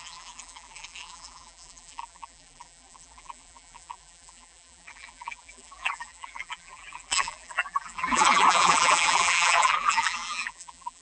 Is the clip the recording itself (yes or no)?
no